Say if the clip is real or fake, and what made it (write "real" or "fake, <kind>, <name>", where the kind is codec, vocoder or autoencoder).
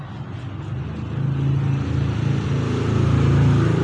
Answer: real